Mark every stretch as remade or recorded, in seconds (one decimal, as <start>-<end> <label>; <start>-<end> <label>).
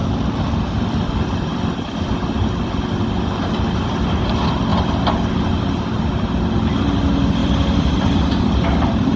0.0-1.5 recorded; 1.5-2.0 remade; 2.0-7.4 recorded; 7.4-9.2 remade